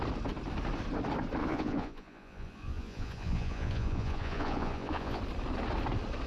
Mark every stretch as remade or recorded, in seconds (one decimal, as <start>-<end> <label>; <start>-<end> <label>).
0.0-1.4 recorded; 1.4-5.2 remade; 5.2-6.3 recorded